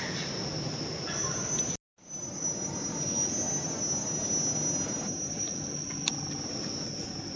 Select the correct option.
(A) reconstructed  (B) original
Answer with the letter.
B